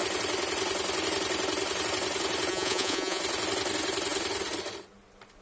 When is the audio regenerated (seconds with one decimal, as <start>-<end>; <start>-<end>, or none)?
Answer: 2.5-3.2